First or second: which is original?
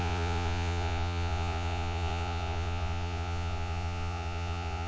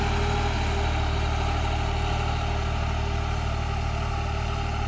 second